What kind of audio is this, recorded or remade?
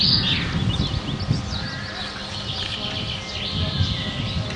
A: recorded